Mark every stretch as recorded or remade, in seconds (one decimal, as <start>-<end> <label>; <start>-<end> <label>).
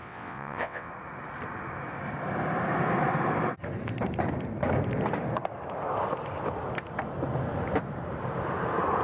0.0-0.9 remade; 0.9-9.0 recorded